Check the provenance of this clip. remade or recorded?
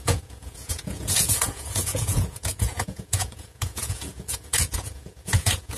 remade